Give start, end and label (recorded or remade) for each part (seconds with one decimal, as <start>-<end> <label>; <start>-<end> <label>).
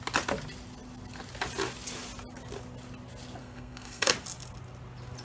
0.0-3.4 recorded; 3.4-4.1 remade; 4.1-5.2 recorded